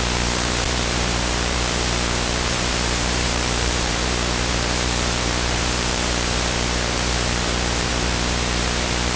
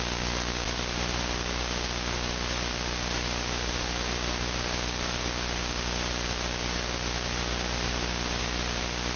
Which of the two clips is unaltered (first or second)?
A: second